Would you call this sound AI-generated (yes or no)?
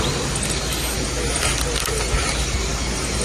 no